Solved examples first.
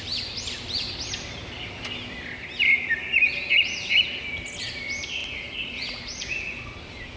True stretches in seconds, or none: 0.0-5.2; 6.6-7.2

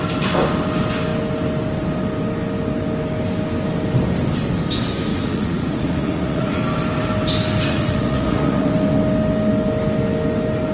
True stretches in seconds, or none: 0.0-5.1; 6.6-7.7; 8.7-10.7

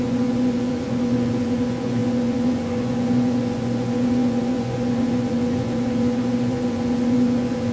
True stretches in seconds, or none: none

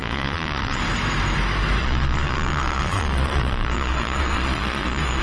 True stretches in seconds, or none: 0.8-1.8

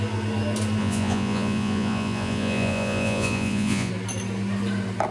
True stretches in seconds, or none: 0.0-0.8; 3.9-5.1

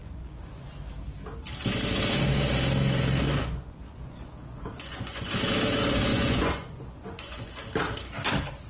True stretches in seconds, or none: 0.7-3.4; 5.3-6.1; 7.5-8.7

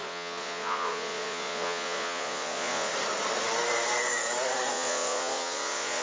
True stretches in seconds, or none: 2.9-4.7